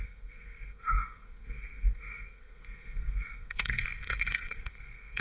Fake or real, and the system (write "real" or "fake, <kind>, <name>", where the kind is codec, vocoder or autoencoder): fake, codec, SNAC